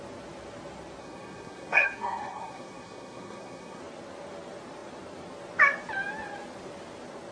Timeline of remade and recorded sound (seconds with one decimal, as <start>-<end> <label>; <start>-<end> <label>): 0.0-1.0 recorded; 1.0-3.8 remade; 3.8-7.3 recorded